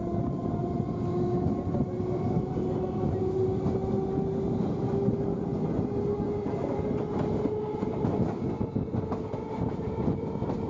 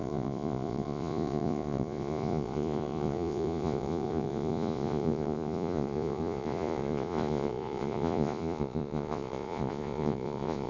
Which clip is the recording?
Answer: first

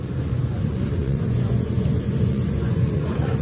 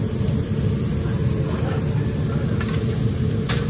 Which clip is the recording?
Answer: second